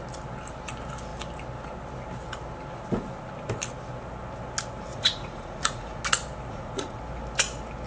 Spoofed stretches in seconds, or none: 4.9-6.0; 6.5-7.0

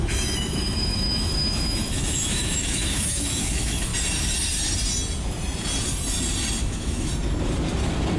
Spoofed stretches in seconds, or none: 0.0-3.9; 6.6-7.1

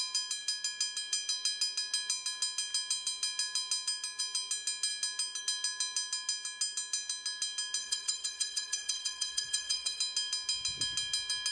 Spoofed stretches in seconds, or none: 7.8-10.0